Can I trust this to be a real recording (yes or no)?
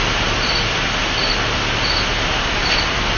no